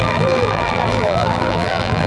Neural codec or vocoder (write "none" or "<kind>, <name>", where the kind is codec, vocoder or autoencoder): vocoder, BigVGAN v2